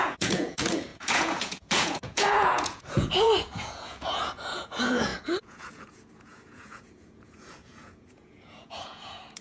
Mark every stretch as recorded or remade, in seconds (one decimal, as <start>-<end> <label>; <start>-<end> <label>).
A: 0.0-9.4 remade